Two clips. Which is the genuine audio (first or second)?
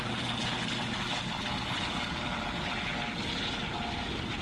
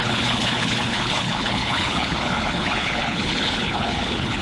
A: first